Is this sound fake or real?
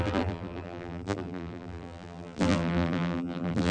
fake